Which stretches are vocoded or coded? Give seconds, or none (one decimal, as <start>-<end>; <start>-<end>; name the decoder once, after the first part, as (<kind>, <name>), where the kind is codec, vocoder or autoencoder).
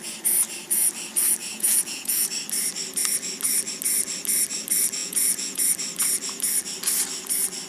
1.5-2.3 (vocoder, Vocos); 5.0-5.6